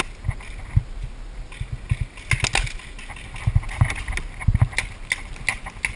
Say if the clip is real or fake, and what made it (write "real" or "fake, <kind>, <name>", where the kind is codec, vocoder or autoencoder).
real